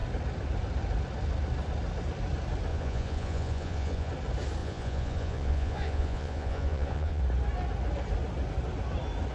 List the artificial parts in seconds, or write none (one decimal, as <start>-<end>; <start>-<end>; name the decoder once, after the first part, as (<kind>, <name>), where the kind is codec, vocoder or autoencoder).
2.7-4.1 (vocoder, Vocos); 4.6-7.2